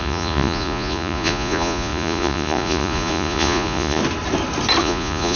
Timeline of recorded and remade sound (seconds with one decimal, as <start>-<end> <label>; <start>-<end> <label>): 0.0-4.0 remade; 4.0-4.8 recorded; 4.8-5.4 remade